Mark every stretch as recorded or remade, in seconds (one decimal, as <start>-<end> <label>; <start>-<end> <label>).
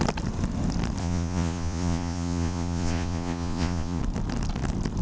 0.0-1.0 recorded; 1.0-4.0 remade; 4.0-5.0 recorded